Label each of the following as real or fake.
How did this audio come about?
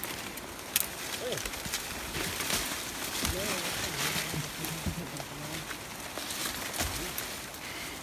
real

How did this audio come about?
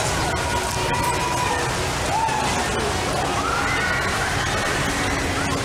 real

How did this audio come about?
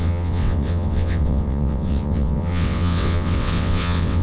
fake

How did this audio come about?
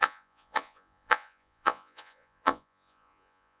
fake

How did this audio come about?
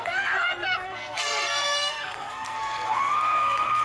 fake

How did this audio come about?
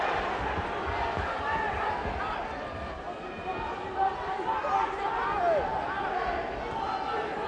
real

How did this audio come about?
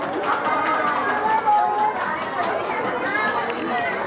real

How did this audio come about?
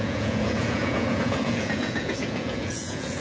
fake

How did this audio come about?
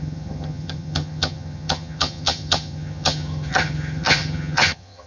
fake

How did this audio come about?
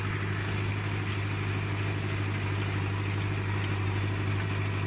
real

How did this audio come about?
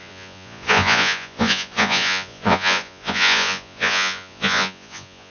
fake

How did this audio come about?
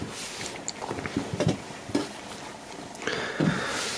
real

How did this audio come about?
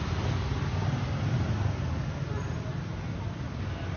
real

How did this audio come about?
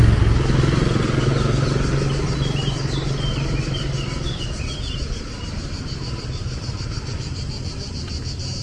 real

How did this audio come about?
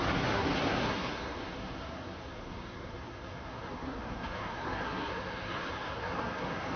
fake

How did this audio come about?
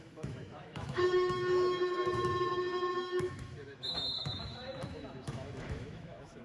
fake